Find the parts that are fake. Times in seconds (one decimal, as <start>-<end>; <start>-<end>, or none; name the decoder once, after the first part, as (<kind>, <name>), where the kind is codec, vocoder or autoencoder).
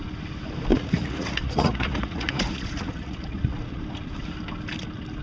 0.7-3.8 (vocoder, Vocos)